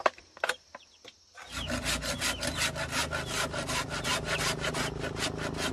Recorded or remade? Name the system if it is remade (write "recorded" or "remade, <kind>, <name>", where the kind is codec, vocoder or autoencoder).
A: recorded